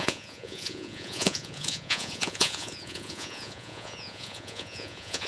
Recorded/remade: remade